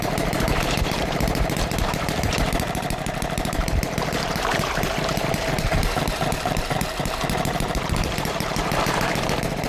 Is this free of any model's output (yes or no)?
no